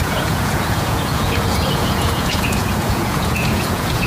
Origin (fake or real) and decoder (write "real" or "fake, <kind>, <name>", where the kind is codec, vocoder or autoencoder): fake, vocoder, Vocos